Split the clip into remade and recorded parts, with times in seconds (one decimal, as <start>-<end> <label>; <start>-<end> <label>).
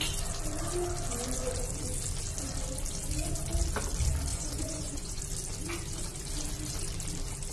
0.0-4.3 recorded; 4.3-5.2 remade; 5.2-7.5 recorded